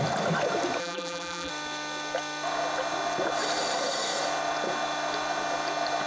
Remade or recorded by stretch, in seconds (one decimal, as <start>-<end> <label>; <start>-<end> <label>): 0.0-0.8 recorded; 0.8-1.5 remade; 1.5-6.1 recorded